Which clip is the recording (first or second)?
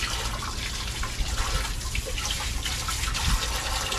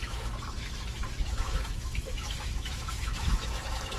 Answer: first